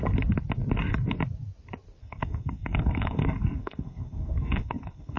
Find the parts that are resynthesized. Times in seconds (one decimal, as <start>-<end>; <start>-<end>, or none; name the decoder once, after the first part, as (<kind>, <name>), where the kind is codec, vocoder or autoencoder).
2.0-5.2 (codec, SNAC)